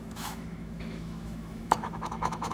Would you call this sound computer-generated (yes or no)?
yes